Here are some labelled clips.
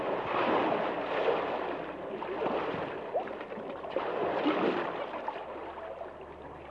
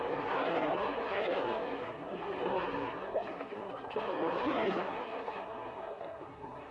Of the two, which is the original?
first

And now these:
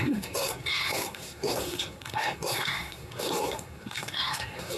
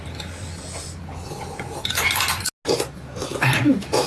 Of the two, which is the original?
second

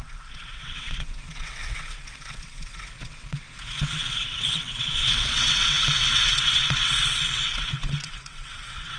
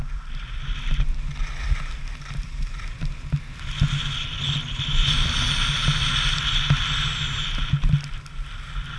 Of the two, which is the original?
second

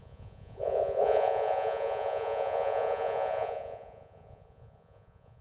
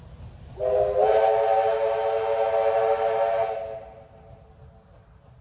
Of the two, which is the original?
second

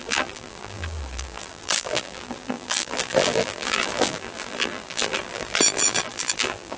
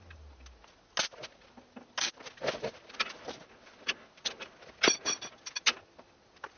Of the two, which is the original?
second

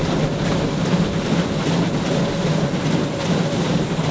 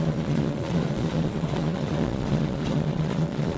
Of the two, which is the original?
first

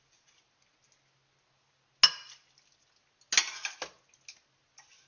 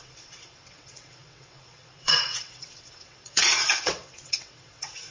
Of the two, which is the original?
first